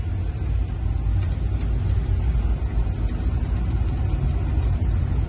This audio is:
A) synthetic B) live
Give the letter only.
B